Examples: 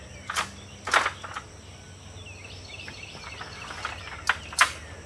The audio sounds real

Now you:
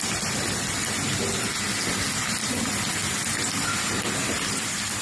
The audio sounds real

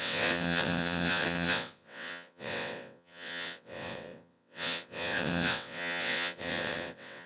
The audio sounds fake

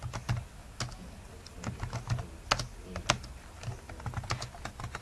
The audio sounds real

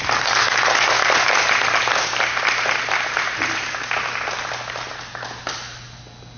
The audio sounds real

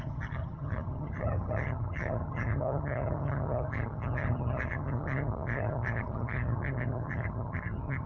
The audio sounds fake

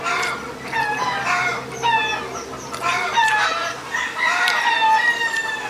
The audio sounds real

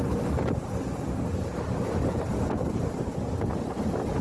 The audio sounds real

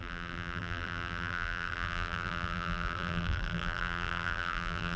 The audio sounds fake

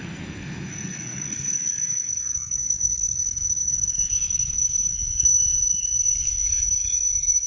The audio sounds fake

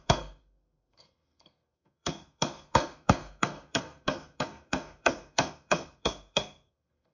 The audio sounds fake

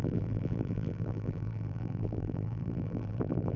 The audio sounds fake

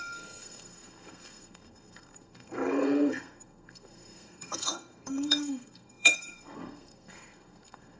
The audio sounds fake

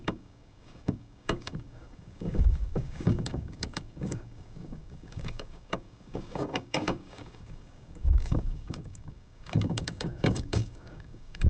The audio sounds fake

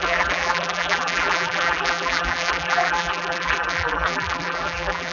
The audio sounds fake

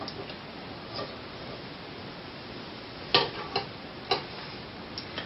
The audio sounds real